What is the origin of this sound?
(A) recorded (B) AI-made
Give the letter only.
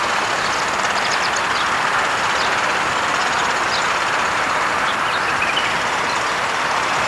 A